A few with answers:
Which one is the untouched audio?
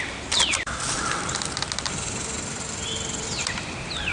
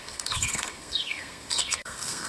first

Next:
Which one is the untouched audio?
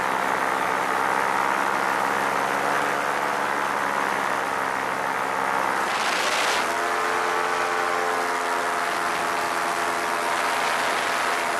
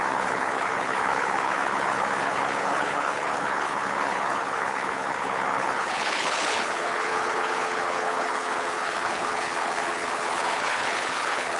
first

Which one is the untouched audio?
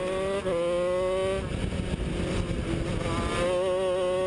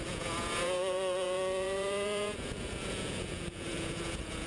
first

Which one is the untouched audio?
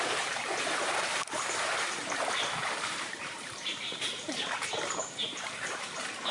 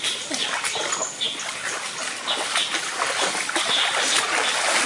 second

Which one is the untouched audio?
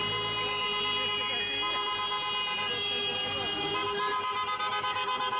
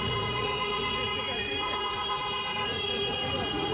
first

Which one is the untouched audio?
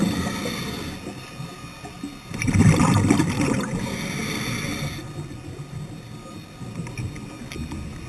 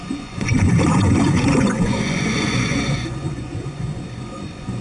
first